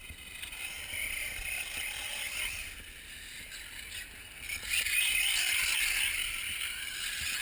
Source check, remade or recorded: recorded